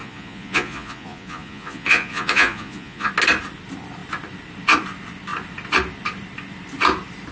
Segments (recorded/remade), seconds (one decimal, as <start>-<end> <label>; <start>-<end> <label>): 0.0-3.1 remade; 3.1-7.3 recorded